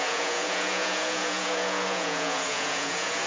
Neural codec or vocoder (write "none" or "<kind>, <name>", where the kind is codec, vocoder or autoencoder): vocoder, Vocos